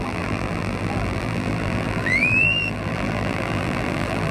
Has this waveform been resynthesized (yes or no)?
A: yes